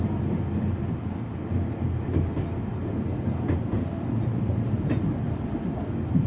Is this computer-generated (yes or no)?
no